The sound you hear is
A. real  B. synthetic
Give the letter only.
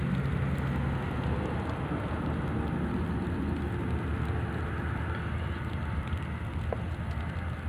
A